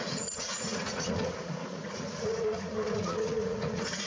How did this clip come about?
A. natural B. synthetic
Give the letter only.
B